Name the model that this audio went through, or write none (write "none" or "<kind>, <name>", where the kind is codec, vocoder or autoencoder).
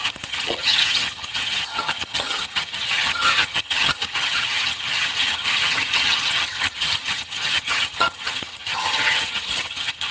vocoder, HiFi-GAN